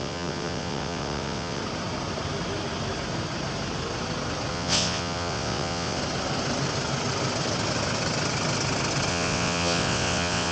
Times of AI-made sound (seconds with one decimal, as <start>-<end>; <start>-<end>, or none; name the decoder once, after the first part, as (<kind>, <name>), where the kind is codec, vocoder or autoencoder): 0.0-1.6 (vocoder, WaveNeXt); 4.5-6.0; 9.1-10.5